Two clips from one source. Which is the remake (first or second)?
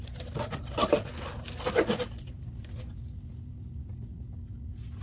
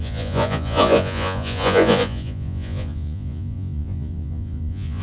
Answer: second